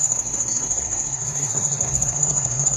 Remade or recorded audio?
remade